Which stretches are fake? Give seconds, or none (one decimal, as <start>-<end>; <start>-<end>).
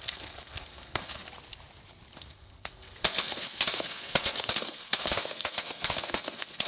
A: 0.0-1.2; 2.2-6.7